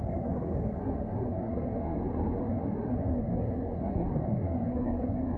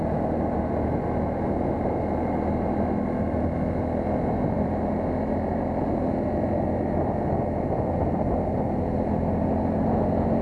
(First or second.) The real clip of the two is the second